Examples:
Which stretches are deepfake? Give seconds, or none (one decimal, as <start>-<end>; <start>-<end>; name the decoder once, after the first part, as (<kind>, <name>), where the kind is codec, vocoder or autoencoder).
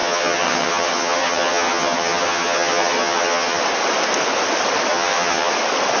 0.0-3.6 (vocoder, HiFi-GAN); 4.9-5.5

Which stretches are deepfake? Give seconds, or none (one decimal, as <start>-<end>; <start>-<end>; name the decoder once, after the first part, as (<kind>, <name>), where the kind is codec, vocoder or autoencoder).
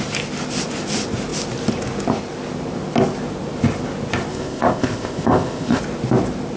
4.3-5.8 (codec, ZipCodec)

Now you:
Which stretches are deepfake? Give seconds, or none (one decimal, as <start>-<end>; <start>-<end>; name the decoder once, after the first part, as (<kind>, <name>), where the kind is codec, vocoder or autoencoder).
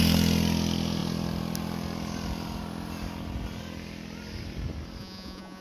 5.0-5.6 (vocoder, Vocos)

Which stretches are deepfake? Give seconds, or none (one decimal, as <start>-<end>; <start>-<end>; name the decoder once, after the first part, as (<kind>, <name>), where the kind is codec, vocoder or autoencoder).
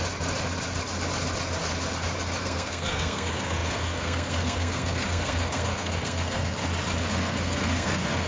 2.4-6.6 (codec, SNAC); 7.1-8.3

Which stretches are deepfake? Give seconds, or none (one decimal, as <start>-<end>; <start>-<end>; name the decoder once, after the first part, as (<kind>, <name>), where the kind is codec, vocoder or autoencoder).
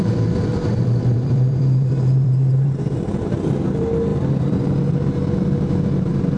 0.5-3.6 (vocoder, BigVGAN v2); 4.1-4.6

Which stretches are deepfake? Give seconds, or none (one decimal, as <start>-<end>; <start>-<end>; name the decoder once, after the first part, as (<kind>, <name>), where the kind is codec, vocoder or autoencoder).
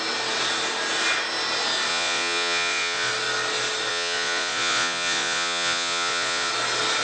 1.9-3.1 (vocoder, Vocos); 3.9-6.5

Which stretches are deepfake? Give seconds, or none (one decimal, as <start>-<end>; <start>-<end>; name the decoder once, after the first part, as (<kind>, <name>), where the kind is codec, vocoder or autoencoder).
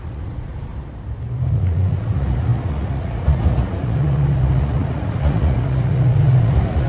0.0-0.7 (vocoder, Vocos); 1.5-6.9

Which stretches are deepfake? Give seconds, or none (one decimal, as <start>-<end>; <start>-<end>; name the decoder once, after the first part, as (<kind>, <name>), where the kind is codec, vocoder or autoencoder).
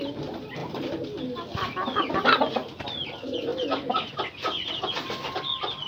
none